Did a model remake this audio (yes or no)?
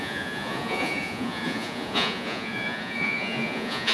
yes